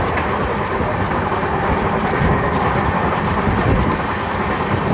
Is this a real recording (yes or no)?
yes